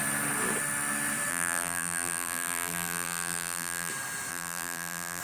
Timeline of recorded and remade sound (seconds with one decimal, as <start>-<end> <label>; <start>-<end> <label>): 0.0-1.3 recorded; 1.3-3.9 remade; 3.9-4.3 recorded; 4.3-5.2 remade